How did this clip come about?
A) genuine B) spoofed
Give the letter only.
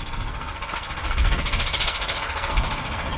B